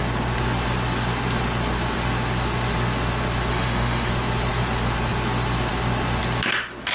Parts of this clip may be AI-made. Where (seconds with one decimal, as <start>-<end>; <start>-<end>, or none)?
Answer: 3.5-4.1